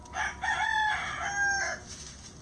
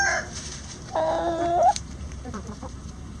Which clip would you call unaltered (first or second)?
first